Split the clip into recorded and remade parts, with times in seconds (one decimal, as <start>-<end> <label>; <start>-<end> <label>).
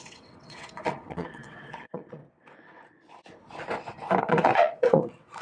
0.0-2.2 remade; 2.2-4.2 recorded; 4.2-5.4 remade